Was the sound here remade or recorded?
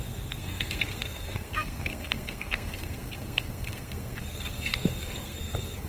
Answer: remade